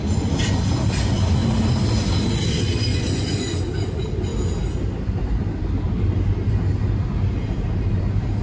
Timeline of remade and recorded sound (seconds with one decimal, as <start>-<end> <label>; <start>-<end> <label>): 0.0-2.9 recorded; 2.9-3.6 remade; 3.6-8.4 recorded